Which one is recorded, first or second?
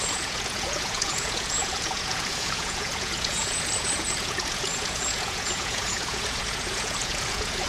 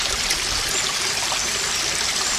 second